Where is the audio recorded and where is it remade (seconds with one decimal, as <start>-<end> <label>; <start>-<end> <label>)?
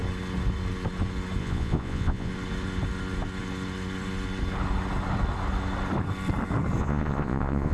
0.0-1.4 recorded; 1.4-2.3 remade; 2.3-6.8 recorded; 6.8-7.7 remade